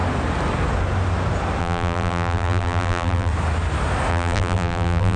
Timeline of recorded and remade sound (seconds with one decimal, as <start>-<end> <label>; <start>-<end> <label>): 0.0-1.6 recorded; 1.6-3.3 remade; 3.3-4.1 recorded; 4.1-5.2 remade